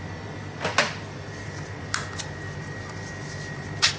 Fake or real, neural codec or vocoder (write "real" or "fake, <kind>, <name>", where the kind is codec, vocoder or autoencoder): fake, vocoder, BigVGAN v2